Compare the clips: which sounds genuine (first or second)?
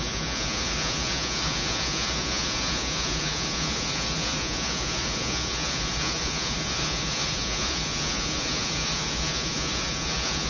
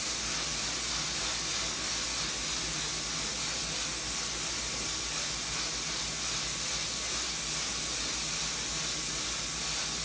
second